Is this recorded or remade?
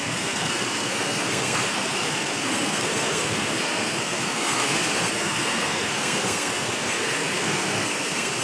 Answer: remade